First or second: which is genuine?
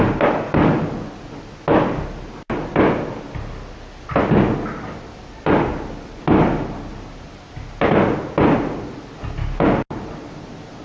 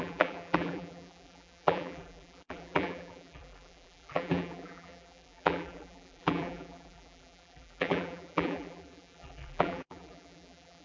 first